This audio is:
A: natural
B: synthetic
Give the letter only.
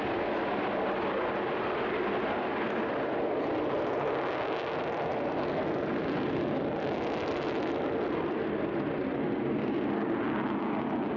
A